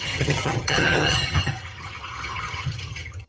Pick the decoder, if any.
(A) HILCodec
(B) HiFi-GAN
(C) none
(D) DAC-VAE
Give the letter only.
B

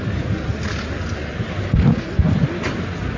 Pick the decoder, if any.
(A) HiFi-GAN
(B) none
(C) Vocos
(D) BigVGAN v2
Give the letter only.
B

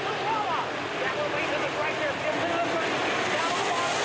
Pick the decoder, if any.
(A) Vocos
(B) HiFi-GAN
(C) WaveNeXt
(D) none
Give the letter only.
D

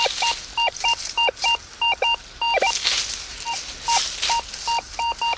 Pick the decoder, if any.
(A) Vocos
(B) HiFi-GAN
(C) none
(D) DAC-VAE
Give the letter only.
C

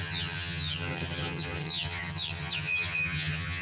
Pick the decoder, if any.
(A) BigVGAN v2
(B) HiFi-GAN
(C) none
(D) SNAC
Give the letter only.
B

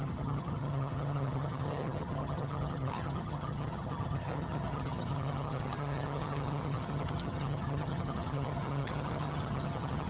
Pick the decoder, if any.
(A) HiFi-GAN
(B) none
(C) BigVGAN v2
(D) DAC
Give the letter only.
A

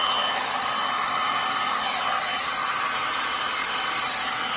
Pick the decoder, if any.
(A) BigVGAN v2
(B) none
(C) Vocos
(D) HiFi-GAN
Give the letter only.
B